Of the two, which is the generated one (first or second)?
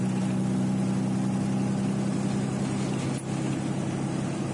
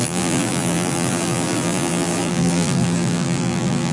second